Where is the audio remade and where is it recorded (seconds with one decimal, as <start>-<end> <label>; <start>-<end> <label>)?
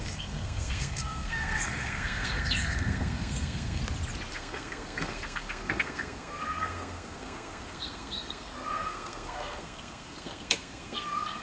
0.0-3.8 remade; 3.8-4.3 recorded; 4.3-11.4 remade